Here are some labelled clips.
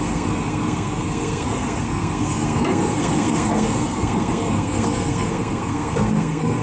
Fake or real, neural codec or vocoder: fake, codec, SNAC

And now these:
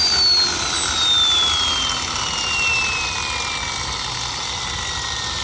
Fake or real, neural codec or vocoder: real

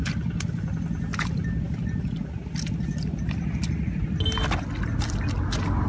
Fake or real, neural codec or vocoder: real